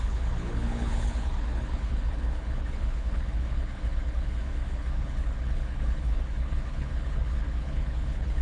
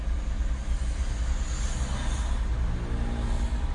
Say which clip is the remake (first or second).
first